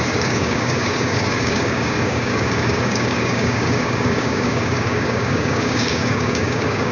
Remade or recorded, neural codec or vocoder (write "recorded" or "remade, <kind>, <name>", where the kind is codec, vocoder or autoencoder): remade, codec, DAC